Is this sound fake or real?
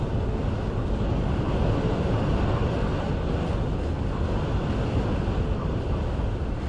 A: real